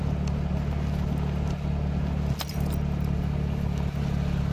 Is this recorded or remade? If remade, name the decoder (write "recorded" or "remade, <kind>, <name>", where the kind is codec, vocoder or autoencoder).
recorded